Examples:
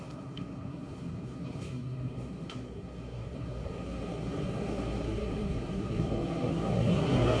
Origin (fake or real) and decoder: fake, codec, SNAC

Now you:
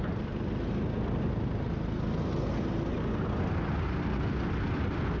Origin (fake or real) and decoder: real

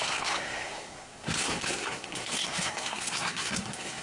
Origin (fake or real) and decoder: fake, codec, SNAC